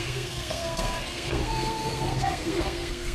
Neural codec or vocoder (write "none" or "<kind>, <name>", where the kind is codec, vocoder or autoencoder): codec, SNAC